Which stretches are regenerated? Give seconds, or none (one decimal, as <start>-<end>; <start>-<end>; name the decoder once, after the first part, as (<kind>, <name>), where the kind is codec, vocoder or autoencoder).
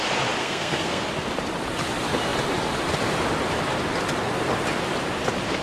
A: 0.4-1.0 (codec, SNAC)